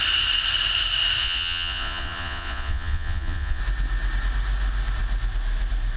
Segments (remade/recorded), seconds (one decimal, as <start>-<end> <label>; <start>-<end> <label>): 0.0-1.2 recorded; 1.2-3.6 remade; 3.6-6.0 recorded